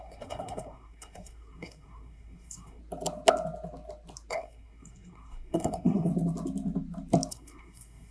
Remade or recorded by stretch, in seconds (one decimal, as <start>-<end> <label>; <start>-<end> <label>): 0.0-2.8 remade; 2.8-4.3 recorded; 4.3-6.1 remade; 6.1-7.3 recorded; 7.3-8.1 remade